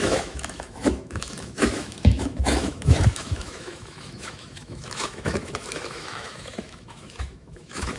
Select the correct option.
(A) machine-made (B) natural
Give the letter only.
A